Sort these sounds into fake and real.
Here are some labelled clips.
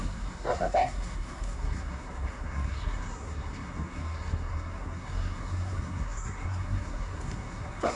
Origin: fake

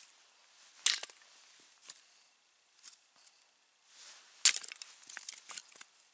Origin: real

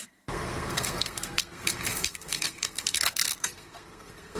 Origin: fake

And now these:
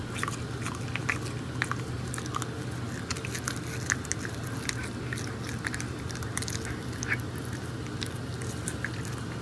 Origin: real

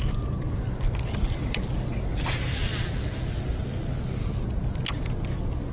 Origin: real